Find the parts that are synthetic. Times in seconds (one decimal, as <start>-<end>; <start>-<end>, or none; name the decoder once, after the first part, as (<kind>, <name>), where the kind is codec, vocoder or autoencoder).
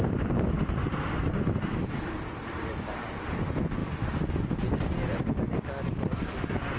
0.8-3.1 (vocoder, BigVGAN v2)